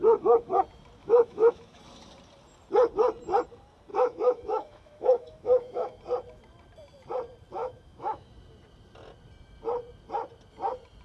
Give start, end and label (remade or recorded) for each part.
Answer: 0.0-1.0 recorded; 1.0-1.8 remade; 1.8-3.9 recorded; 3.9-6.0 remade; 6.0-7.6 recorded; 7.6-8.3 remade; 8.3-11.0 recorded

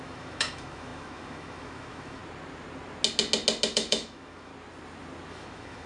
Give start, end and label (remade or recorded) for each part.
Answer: 0.0-2.2 remade; 2.2-3.7 recorded; 3.7-4.5 remade; 4.5-5.3 recorded; 5.3-5.9 remade

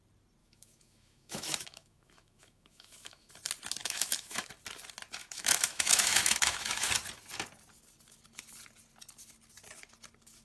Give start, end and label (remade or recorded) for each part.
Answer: 0.0-0.4 recorded; 0.4-3.3 remade; 3.3-3.8 recorded; 3.8-4.5 remade; 4.5-5.2 recorded; 5.2-6.9 remade; 6.9-10.4 recorded

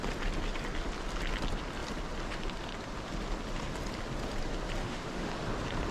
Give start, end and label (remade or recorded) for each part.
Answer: 0.0-4.8 recorded; 4.8-5.3 remade; 5.3-5.9 recorded